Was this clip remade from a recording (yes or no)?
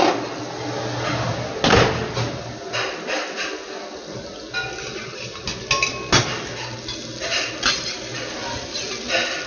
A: no